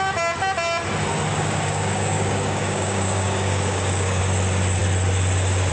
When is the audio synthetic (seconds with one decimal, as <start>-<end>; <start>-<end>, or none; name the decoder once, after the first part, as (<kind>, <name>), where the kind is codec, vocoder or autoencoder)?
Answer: 1.3-4.2 (codec, DAC)